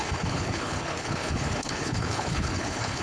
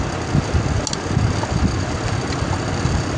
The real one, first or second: second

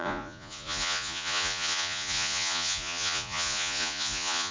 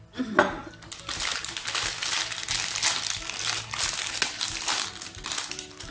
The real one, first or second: second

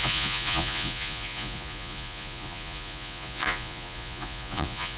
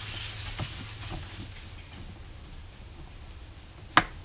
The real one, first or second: second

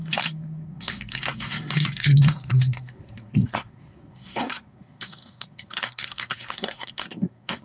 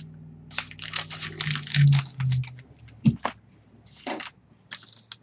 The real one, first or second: second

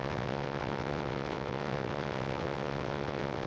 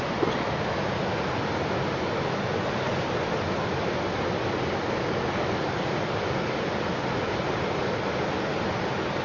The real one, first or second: second